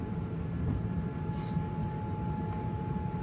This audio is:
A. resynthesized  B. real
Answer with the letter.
B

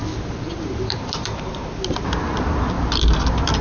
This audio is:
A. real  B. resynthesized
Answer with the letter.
A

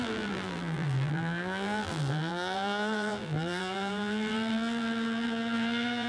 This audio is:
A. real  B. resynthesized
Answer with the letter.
B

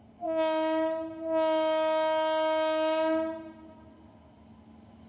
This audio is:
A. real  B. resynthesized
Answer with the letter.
A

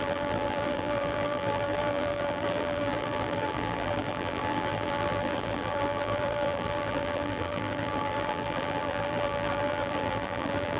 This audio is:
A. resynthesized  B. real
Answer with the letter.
A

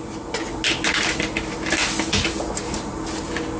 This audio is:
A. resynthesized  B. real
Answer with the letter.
B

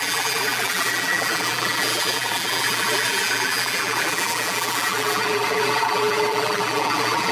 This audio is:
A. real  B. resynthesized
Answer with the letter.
B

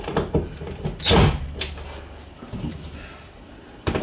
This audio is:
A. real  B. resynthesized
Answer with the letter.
A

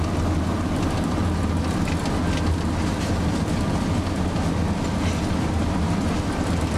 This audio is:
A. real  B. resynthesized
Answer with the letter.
A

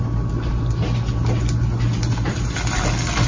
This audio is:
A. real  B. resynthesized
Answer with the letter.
A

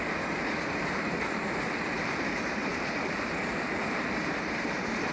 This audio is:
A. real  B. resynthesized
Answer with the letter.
B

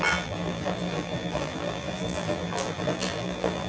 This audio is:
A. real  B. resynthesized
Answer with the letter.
B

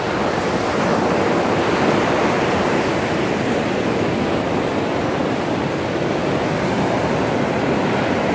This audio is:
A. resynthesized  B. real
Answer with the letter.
B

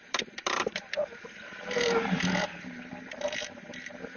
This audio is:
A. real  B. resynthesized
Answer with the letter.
B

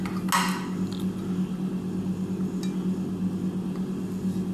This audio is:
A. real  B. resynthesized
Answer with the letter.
A